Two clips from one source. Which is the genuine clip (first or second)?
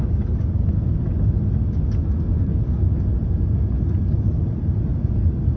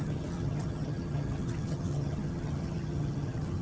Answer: first